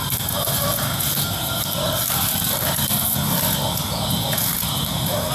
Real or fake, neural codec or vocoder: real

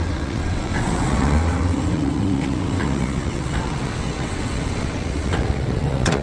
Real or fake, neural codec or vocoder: fake, vocoder, WaveNeXt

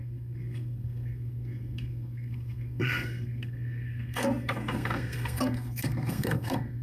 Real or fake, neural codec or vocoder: fake, codec, SNAC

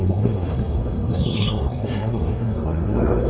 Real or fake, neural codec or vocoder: fake, codec, SNAC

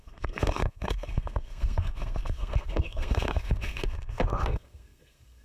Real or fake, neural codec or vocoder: fake, codec, SNAC